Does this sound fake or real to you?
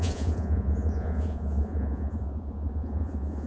fake